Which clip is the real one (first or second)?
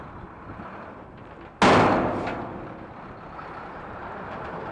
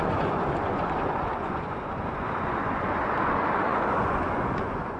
first